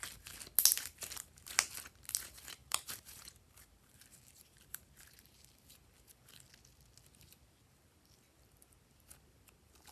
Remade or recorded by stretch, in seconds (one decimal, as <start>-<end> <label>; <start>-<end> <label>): 0.0-2.6 recorded; 2.6-5.5 remade; 5.5-9.9 recorded